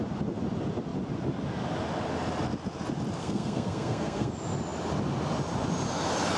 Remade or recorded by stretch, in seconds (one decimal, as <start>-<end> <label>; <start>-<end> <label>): 0.0-3.2 recorded; 3.2-4.3 remade; 4.3-6.4 recorded